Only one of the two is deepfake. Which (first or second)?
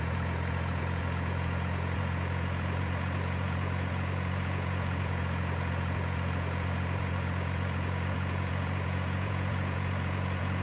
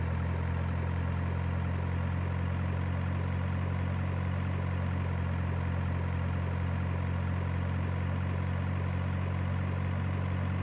first